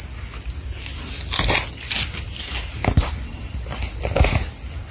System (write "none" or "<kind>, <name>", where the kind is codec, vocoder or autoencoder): none